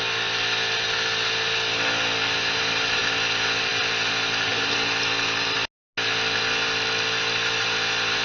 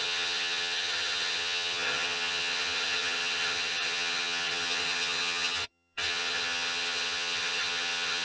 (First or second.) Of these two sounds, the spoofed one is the second